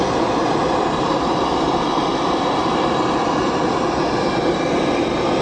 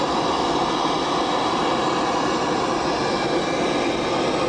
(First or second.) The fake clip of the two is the first